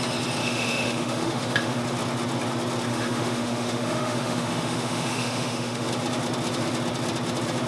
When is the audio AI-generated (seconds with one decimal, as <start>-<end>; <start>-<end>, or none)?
0.4-1.8; 2.9-5.9